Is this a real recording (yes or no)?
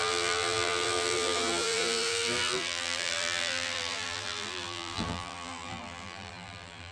no